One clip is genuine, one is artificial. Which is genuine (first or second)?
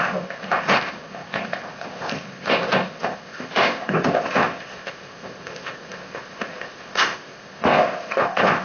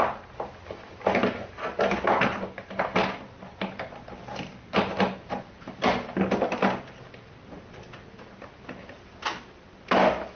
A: second